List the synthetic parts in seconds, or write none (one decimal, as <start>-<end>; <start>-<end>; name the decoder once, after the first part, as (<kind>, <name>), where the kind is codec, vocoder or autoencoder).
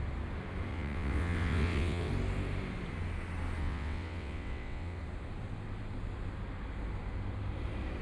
0.7-2.1 (vocoder, WaveNeXt); 3.6-5.0